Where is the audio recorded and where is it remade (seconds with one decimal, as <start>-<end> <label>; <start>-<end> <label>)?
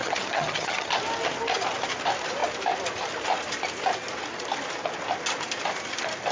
0.0-0.9 remade; 0.9-6.3 recorded